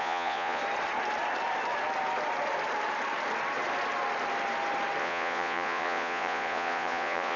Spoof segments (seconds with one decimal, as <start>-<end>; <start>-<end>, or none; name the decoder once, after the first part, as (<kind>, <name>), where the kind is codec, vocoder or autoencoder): 0.0-0.6 (vocoder, Vocos); 5.0-7.4